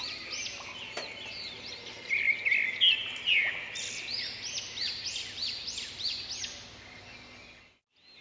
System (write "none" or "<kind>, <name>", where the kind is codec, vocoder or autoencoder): none